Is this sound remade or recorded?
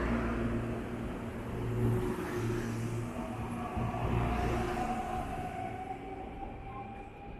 recorded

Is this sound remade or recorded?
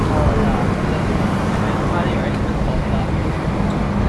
recorded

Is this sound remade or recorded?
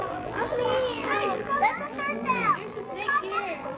remade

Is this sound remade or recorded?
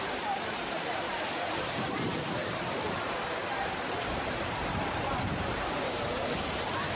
remade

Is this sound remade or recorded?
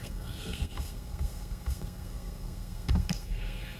remade